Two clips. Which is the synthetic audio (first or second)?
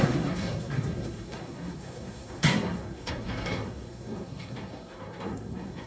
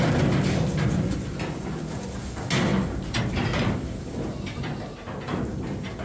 first